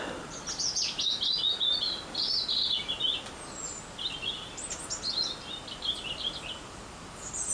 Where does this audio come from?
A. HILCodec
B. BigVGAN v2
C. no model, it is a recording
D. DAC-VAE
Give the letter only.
C